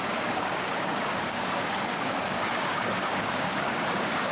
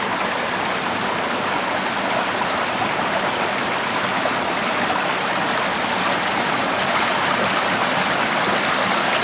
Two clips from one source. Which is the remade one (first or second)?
first